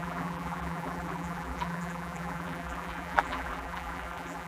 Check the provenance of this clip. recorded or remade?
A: remade